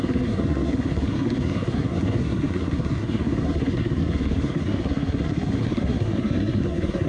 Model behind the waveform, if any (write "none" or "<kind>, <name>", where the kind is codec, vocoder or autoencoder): codec, SNAC